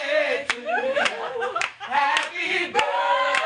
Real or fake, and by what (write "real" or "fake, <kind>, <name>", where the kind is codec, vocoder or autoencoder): fake, autoencoder, DAC-VAE